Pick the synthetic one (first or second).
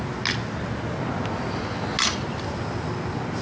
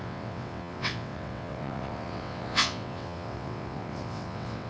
second